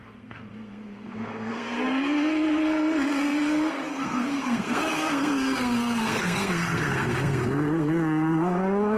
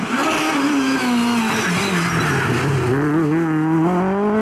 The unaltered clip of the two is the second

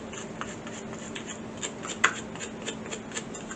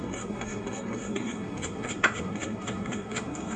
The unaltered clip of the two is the first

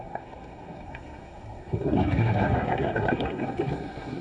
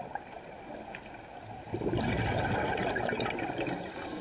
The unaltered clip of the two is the second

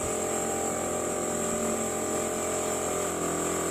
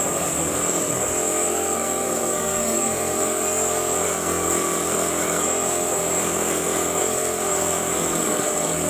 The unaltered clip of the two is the first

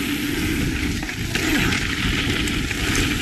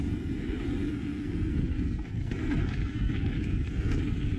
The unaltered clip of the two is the first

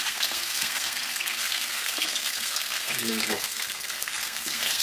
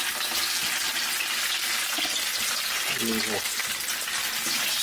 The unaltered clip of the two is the second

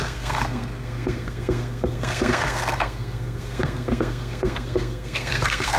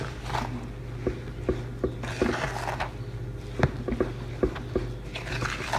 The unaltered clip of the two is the second